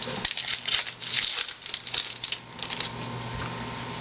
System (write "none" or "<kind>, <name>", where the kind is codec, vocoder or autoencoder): none